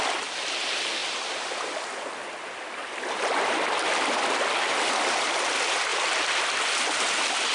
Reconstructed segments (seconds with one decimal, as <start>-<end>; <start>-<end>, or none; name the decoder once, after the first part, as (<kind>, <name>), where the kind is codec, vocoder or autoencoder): none